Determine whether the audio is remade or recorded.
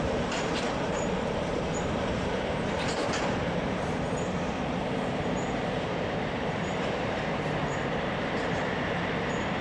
remade